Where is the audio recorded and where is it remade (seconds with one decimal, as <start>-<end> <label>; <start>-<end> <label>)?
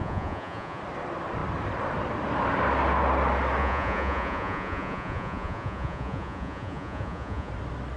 0.0-0.8 remade; 0.8-3.6 recorded; 3.6-7.5 remade; 7.5-8.0 recorded